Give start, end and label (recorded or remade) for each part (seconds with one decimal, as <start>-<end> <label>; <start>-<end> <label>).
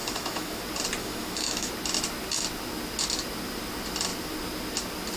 0.0-0.6 remade; 0.6-1.0 recorded; 1.0-1.7 remade; 1.7-5.2 recorded